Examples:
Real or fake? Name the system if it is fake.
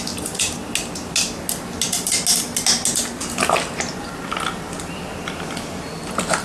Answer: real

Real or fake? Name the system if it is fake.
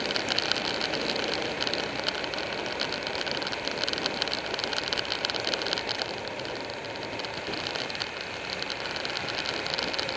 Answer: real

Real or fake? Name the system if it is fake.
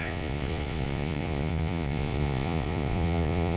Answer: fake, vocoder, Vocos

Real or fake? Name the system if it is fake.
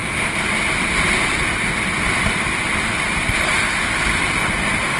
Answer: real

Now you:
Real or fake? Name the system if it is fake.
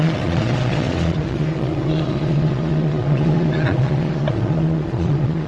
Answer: fake, vocoder, Vocos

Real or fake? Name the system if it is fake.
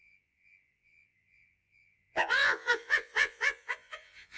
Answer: fake, vocoder, Vocos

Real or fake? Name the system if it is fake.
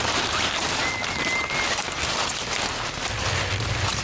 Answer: real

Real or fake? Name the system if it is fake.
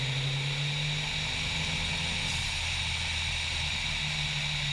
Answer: real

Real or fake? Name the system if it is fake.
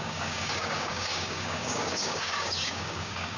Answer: fake, codec, DAC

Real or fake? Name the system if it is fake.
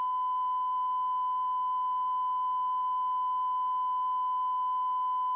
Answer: real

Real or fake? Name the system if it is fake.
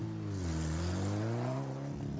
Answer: real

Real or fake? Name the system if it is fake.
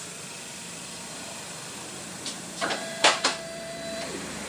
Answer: fake, vocoder, BigVGAN v2